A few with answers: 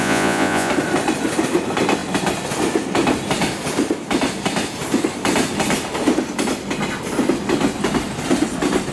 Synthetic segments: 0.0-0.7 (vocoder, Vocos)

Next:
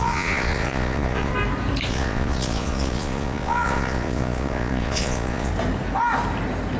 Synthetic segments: 0.0-1.3 (vocoder, Vocos); 1.9-5.5

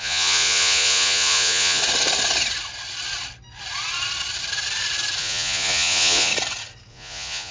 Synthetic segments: 0.0-1.8 (vocoder, Vocos); 5.2-6.3; 6.9-7.5

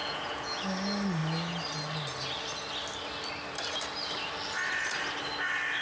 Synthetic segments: 0.0-0.6 (vocoder, Vocos)

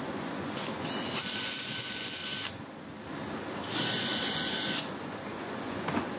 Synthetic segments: 0.0-2.2 (vocoder, Vocos); 4.0-6.2

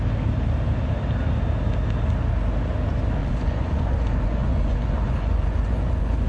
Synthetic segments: 3.2-6.3 (vocoder, Vocos)

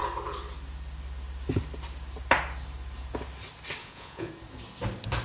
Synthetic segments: 3.8-4.3 (vocoder, Vocos)

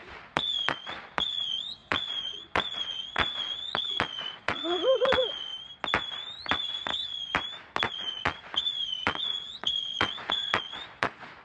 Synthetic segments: 0.0-5.5 (vocoder, Vocos); 6.5-6.9; 7.9-11.4